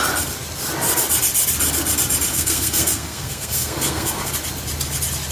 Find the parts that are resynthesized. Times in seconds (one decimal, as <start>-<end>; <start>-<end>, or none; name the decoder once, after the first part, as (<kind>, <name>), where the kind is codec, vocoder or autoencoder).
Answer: 2.3-4.3 (codec, SNAC)